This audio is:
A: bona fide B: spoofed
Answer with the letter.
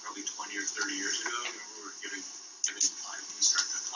A